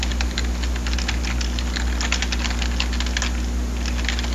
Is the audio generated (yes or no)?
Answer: no